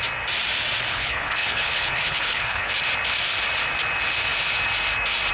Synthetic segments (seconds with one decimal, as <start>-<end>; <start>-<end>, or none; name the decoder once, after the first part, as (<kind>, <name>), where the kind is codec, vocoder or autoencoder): 0.9-2.7 (codec, HILCodec)